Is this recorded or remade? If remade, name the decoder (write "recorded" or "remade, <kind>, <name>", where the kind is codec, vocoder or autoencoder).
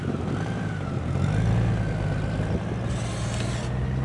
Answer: recorded